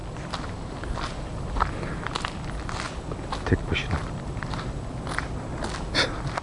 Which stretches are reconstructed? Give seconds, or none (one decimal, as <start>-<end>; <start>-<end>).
none